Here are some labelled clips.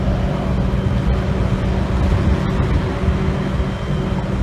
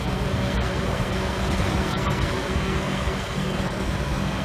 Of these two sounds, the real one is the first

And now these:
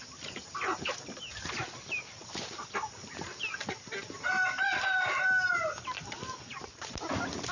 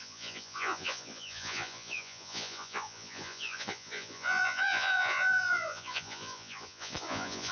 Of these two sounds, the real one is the first